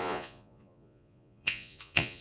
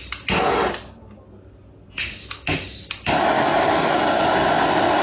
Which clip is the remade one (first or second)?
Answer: first